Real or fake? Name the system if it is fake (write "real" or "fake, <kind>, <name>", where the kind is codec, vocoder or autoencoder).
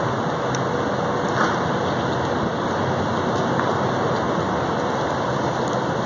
real